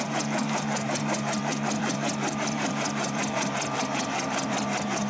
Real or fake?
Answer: fake